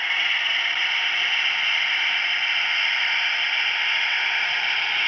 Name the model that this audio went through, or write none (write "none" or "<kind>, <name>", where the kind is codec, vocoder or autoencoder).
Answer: none